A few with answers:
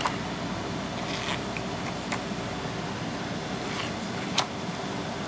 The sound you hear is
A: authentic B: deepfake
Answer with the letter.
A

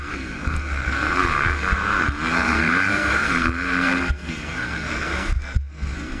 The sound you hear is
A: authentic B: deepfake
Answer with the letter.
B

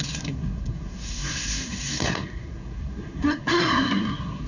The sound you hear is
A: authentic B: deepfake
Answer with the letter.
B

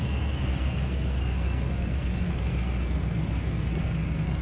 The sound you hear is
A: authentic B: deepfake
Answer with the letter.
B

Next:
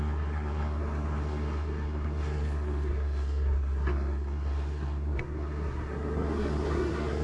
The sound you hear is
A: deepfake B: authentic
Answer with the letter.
A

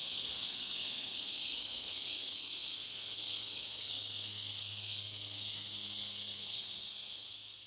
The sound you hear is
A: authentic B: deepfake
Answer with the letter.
B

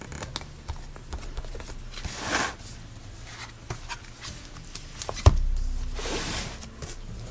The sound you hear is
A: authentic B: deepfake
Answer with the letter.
A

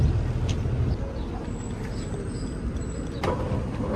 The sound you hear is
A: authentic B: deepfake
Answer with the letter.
A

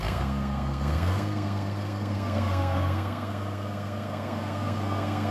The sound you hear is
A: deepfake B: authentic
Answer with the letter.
A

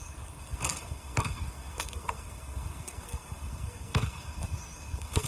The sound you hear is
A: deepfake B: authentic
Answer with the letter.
A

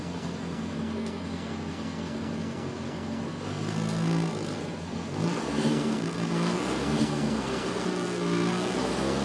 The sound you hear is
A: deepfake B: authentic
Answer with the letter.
A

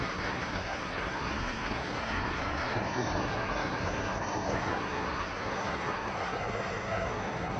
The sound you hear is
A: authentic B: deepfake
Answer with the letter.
B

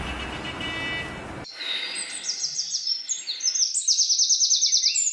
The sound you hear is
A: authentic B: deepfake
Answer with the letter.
A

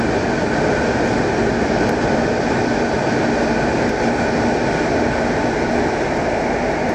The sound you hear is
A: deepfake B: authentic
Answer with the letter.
B